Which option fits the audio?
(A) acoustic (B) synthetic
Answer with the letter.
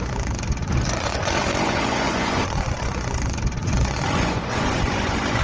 B